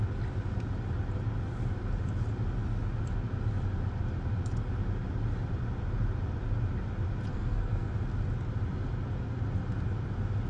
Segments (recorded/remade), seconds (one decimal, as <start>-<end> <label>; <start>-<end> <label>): 0.0-7.3 recorded; 7.3-7.9 remade; 7.9-10.5 recorded